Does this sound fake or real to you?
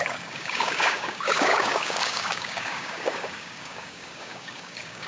fake